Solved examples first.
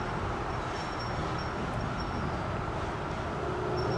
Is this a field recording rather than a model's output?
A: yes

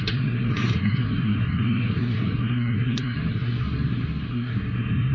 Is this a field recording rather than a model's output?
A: no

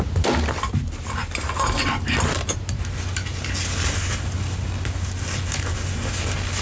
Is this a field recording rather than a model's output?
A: yes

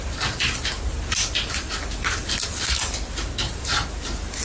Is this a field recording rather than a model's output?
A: yes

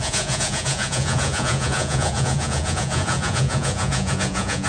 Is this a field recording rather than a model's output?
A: no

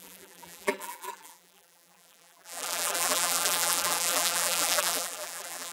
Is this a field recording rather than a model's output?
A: no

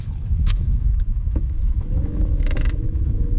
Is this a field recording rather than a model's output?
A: no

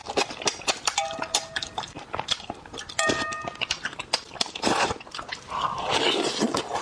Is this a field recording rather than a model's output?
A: yes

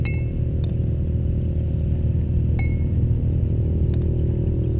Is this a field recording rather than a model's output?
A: yes